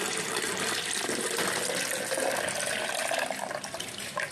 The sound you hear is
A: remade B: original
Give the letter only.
B